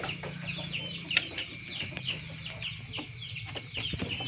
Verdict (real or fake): real